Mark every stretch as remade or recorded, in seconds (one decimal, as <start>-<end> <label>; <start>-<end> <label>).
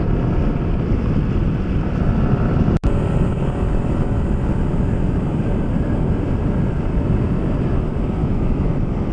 0.0-8.2 recorded; 8.2-8.7 remade; 8.7-9.1 recorded